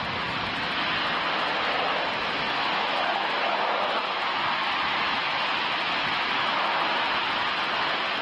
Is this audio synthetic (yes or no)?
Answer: no